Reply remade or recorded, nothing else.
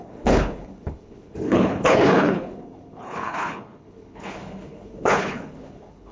remade